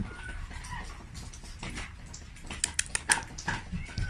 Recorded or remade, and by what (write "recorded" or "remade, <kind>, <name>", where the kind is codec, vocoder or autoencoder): recorded